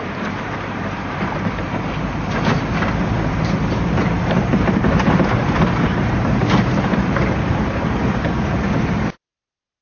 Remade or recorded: remade